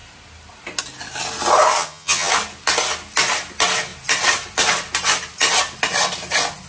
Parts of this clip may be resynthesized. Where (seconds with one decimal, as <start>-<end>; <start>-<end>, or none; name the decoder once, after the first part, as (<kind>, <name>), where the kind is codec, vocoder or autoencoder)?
1.8-2.3 (vocoder, HiFi-GAN)

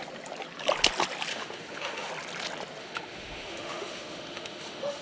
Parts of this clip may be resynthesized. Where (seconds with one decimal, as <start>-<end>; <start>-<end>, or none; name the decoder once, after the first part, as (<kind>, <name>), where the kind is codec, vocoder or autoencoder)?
1.3-2.1 (autoencoder, DAC-VAE); 2.8-5.0

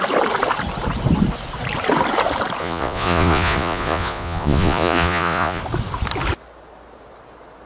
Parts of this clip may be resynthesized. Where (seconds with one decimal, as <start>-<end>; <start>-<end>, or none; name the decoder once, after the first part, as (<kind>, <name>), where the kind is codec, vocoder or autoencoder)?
2.6-5.6 (vocoder, Vocos)

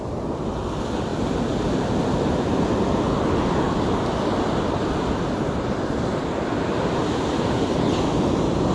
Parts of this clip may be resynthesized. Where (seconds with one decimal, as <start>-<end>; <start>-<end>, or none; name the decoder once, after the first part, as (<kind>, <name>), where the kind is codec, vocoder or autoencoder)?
7.0-7.8 (vocoder, BigVGAN v2)

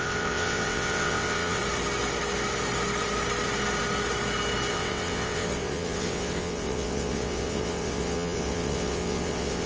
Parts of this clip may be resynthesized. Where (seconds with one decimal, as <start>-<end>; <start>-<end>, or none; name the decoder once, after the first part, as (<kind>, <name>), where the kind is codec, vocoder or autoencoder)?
0.0-1.6 (vocoder, WaveNeXt); 4.7-9.7

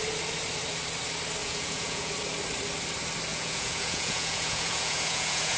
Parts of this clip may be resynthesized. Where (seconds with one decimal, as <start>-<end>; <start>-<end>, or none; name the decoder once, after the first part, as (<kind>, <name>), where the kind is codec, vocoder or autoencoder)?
1.4-2.1 (vocoder, Vocos); 3.3-5.6